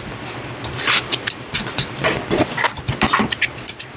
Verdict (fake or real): fake